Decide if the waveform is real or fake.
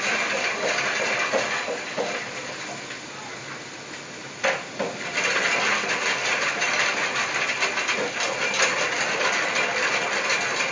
real